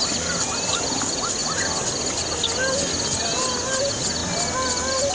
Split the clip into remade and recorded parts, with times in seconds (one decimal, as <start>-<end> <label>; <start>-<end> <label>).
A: 0.0-5.1 recorded